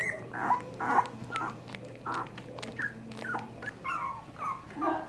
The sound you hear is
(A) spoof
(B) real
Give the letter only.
B